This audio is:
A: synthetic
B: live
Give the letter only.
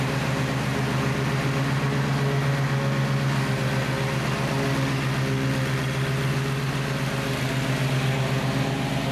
B